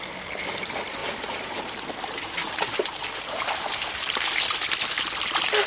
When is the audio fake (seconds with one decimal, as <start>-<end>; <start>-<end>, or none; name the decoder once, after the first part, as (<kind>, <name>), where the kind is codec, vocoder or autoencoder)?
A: 1.0-4.4 (vocoder, BigVGAN v2)